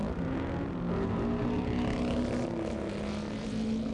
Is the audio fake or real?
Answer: real